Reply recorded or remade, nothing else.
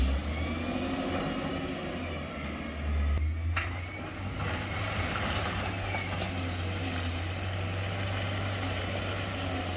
recorded